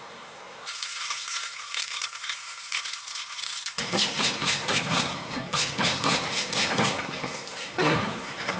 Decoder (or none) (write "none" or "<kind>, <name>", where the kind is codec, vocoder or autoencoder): codec, SNAC